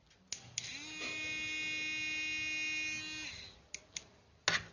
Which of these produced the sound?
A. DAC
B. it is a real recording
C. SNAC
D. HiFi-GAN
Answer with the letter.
B